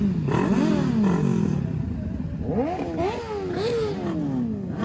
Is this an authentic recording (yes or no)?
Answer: yes